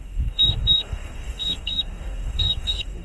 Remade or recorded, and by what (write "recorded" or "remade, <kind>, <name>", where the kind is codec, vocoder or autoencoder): remade, codec, DAC